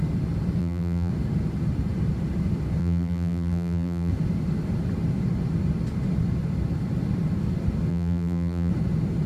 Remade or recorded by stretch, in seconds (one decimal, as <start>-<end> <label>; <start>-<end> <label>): 0.0-0.6 recorded; 0.6-1.1 remade; 1.1-2.8 recorded; 2.8-4.1 remade; 4.1-7.9 recorded; 7.9-8.7 remade; 8.7-9.3 recorded